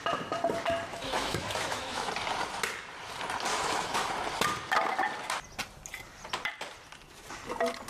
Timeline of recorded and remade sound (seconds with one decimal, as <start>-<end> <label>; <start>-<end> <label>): 0.0-0.9 recorded; 0.9-2.1 remade; 2.1-3.5 recorded; 3.5-4.1 remade; 4.1-7.9 recorded